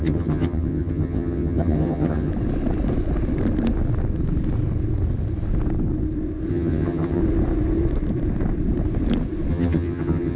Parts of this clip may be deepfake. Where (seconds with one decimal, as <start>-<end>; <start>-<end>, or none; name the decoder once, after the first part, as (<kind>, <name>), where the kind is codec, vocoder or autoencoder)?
0.0-2.3 (vocoder, HiFi-GAN); 6.5-7.2; 9.5-10.4